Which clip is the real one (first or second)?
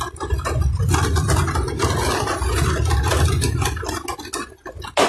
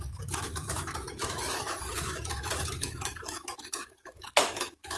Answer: first